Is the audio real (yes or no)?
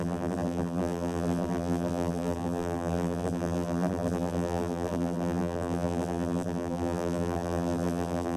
no